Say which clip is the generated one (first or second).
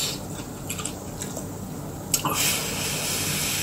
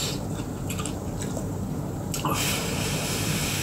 second